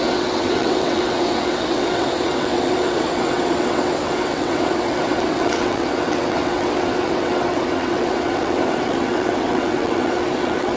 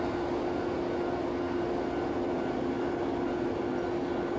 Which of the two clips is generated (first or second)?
first